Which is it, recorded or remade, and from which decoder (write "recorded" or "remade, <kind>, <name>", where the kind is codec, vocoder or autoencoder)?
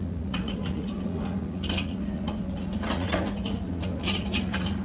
remade, vocoder, Vocos